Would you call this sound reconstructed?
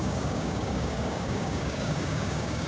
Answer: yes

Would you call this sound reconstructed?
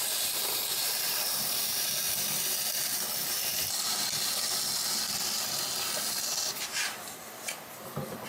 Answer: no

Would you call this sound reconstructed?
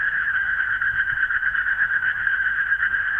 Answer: yes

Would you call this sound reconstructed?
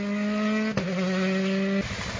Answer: no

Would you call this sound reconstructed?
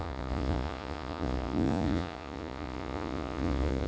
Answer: yes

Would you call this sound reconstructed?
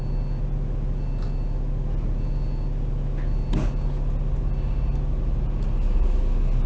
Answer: no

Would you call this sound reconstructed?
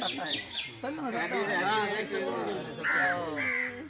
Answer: no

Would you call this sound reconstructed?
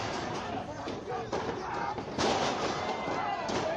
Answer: yes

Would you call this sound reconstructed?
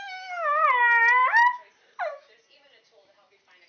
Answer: no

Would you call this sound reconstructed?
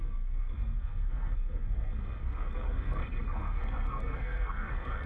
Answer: yes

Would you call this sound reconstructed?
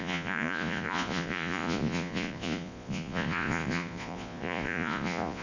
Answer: yes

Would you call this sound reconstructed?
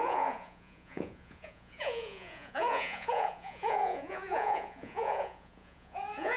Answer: yes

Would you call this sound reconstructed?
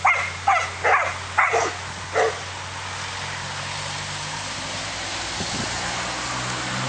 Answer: no